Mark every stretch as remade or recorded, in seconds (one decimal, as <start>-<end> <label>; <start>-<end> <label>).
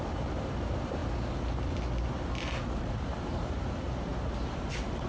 0.0-1.0 remade; 1.0-2.8 recorded; 2.8-4.1 remade; 4.1-4.6 recorded; 4.6-5.1 remade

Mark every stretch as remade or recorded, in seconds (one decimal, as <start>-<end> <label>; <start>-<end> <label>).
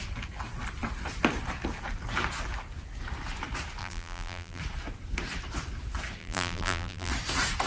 0.0-3.8 recorded; 3.8-4.6 remade; 4.6-6.2 recorded; 6.2-7.1 remade; 7.1-7.7 recorded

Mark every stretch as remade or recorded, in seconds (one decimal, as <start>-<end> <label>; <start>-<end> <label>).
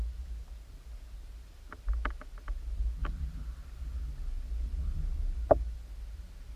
0.0-6.6 recorded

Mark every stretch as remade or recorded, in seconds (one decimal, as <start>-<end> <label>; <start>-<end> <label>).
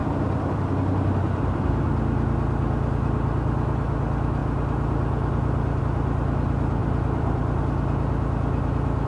0.0-0.7 remade; 0.7-6.8 recorded; 6.8-7.6 remade; 7.6-9.1 recorded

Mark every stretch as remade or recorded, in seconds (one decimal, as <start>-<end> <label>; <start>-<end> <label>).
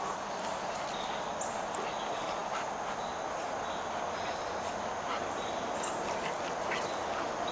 0.0-7.5 recorded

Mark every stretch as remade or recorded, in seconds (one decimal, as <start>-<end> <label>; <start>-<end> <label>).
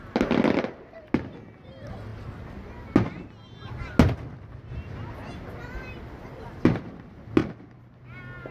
0.0-8.5 recorded